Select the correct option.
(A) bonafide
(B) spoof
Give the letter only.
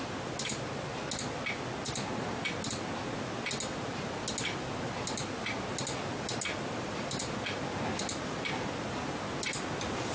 A